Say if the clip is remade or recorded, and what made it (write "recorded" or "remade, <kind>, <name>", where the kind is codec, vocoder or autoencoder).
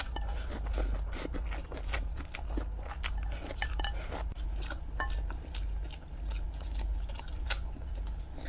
recorded